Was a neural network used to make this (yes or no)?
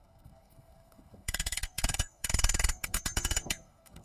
yes